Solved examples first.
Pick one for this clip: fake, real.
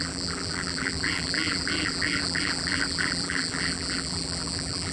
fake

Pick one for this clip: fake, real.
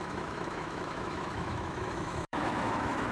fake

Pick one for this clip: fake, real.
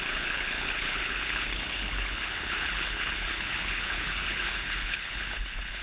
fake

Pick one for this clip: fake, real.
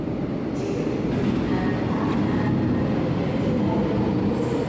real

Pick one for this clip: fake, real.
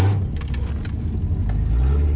real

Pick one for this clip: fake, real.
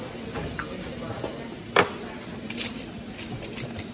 real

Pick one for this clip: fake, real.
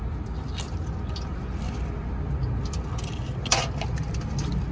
real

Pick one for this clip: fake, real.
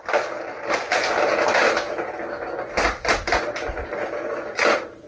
real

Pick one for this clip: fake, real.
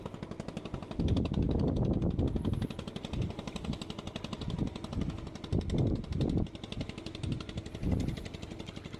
real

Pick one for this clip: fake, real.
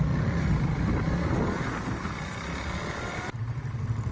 real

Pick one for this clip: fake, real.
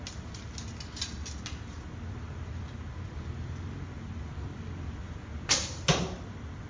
real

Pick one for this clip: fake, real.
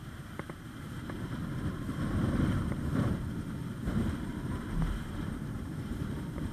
fake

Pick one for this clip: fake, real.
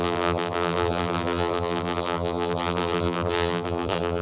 fake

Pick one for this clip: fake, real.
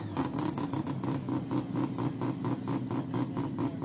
real